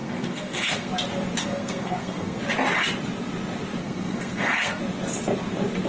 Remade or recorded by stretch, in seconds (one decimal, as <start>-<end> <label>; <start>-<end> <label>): 0.0-0.9 remade; 0.9-1.4 recorded; 1.4-2.4 remade; 2.4-3.8 recorded; 3.8-4.8 remade; 4.8-5.9 recorded